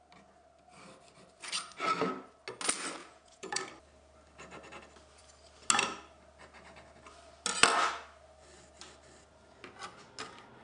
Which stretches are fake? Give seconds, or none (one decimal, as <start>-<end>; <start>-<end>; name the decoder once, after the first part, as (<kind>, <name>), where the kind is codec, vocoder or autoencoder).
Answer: 3.0-3.6 (vocoder, Vocos)